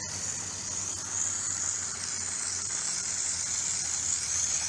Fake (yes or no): no